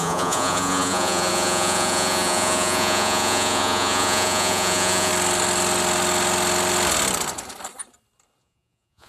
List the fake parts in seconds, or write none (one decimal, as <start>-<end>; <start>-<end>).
0.0-5.1; 8.4-9.1